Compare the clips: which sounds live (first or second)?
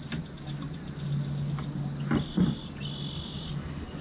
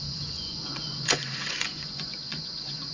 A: first